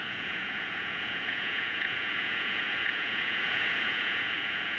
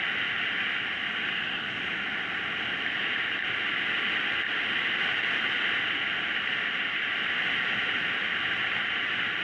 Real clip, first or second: second